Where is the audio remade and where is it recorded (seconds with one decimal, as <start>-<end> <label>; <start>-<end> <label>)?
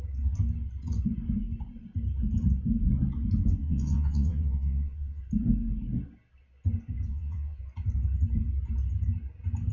0.0-3.6 recorded; 3.6-5.2 remade; 5.2-7.1 recorded; 7.1-7.6 remade; 7.6-9.7 recorded